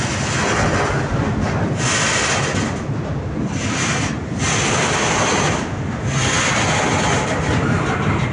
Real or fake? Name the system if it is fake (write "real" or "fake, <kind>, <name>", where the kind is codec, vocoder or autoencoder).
real